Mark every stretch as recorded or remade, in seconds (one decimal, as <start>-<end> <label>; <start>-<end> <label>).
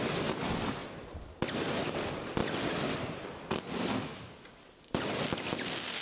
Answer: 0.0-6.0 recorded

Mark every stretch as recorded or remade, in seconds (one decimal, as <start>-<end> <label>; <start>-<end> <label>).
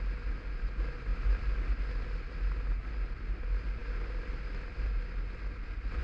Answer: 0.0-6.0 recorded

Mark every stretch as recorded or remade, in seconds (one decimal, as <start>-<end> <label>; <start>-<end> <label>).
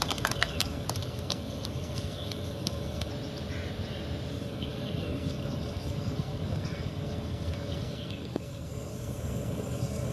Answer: 0.0-3.1 remade; 3.1-4.3 recorded; 4.3-10.1 remade